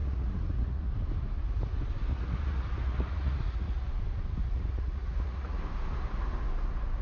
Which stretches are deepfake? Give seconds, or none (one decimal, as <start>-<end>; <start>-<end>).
0.0-0.9; 2.1-3.9; 4.4-5.6